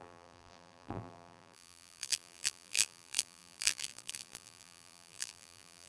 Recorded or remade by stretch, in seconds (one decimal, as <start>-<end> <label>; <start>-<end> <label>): 0.0-5.9 remade